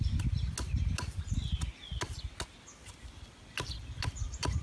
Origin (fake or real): real